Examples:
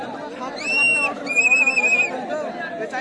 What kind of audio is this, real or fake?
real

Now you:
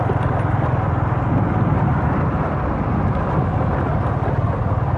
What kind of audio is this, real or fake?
real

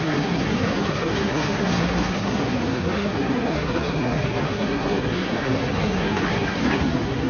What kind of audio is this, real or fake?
fake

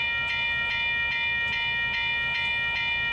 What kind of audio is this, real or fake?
real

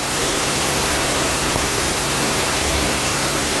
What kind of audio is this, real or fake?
fake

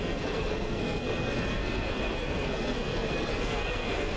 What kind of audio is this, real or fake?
fake